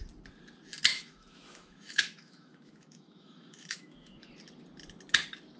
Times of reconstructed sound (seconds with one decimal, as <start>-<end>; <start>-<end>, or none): 0.9-4.3